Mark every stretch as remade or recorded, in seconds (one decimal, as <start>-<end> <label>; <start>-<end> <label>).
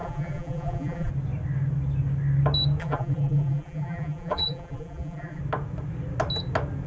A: 0.0-1.1 remade; 1.1-2.8 recorded; 2.8-5.4 remade; 5.4-6.9 recorded